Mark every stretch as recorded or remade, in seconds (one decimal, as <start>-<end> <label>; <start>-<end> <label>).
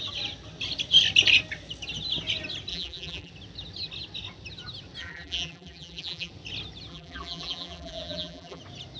0.0-2.7 recorded; 2.7-3.3 remade; 3.3-5.0 recorded; 5.0-6.3 remade; 6.3-6.9 recorded; 6.9-8.6 remade; 8.6-9.0 recorded